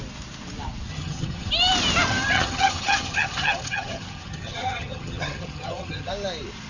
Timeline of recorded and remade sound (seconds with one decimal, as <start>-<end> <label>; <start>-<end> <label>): 0.0-0.9 recorded; 0.9-1.5 remade; 1.5-2.1 recorded; 2.1-6.1 remade; 6.1-6.7 recorded